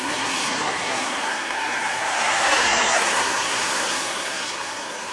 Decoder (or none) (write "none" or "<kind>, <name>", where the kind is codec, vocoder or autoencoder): codec, SNAC